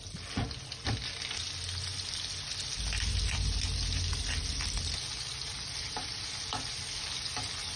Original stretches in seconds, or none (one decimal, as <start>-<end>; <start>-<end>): 0.0-7.8

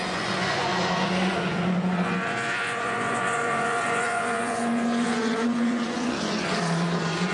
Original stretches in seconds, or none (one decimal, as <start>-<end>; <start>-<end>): none

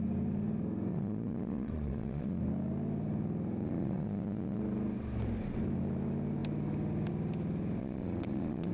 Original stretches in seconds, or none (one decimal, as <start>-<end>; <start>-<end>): 0.0-0.9; 2.4-3.6; 4.6-7.8

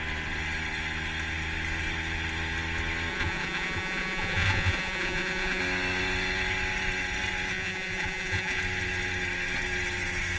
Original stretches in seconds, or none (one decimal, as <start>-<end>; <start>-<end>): 0.0-3.1; 5.6-7.5; 8.6-10.4